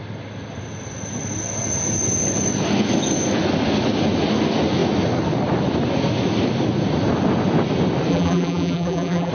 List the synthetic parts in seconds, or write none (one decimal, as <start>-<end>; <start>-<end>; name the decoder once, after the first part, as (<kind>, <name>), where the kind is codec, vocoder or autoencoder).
8.1-9.3 (vocoder, BigVGAN v2)